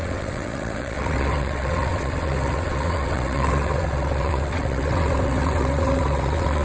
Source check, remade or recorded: remade